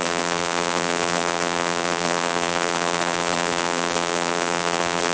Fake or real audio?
fake